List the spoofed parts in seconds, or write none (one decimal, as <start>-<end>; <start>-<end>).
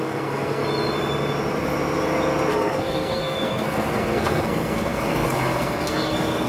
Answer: 0.0-0.6; 2.6-6.5